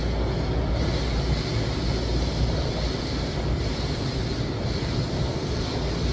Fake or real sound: real